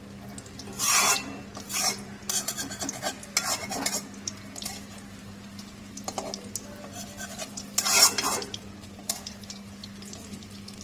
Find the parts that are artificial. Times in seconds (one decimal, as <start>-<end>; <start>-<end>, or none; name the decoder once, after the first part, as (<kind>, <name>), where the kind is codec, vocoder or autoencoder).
none